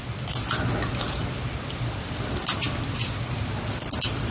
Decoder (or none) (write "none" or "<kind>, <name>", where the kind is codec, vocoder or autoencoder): none